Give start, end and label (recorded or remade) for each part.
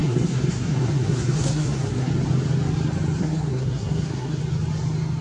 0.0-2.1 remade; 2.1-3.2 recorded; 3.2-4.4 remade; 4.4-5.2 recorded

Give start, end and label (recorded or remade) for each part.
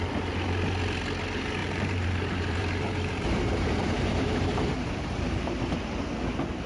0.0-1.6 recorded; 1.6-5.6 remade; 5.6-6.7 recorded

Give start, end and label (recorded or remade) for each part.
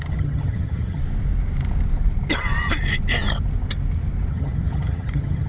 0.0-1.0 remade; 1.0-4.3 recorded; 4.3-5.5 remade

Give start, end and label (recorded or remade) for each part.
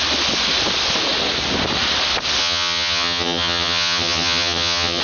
0.0-2.4 recorded; 2.4-5.0 remade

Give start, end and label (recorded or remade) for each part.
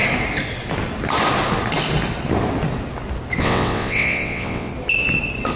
0.0-3.4 recorded; 3.4-4.7 remade; 4.7-5.6 recorded